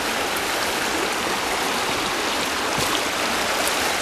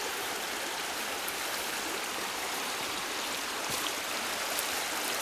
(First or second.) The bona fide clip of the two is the first